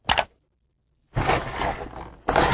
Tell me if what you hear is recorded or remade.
recorded